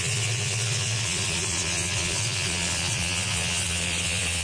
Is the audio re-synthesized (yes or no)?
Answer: yes